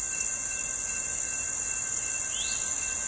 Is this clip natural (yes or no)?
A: yes